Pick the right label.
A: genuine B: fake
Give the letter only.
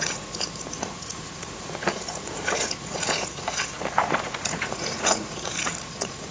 B